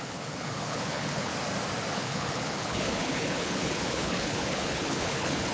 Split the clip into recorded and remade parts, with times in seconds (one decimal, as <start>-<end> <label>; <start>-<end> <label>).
0.0-1.3 remade; 1.3-1.9 recorded; 1.9-5.5 remade